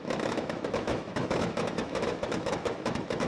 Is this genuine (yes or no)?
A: no